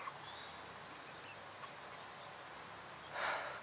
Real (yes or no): yes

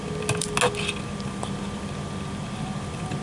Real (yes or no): yes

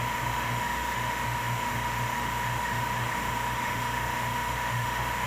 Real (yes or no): no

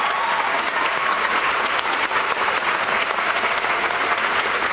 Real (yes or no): no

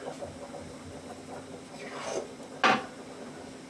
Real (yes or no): yes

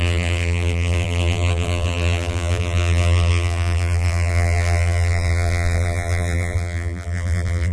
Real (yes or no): no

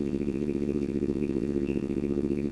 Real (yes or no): no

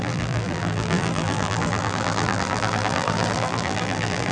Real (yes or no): no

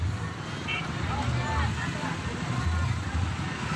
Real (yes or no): yes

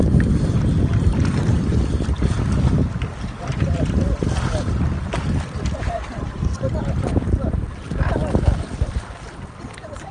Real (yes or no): no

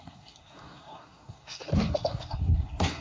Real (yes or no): no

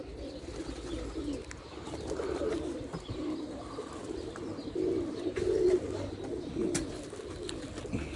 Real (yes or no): yes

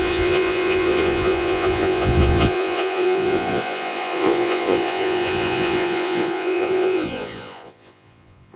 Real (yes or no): no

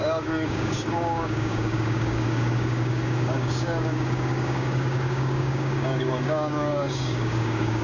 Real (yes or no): no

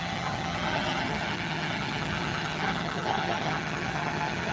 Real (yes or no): no